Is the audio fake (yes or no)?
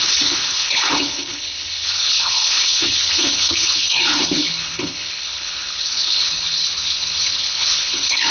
yes